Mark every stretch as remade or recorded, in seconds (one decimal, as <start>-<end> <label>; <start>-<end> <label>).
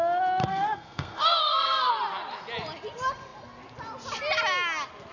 0.0-0.4 recorded; 0.4-1.9 remade; 1.9-5.1 recorded